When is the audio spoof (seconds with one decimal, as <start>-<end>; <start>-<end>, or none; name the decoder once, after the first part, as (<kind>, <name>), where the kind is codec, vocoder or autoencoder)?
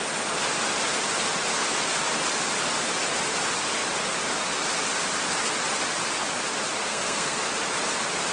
6.9-7.4 (codec, SNAC)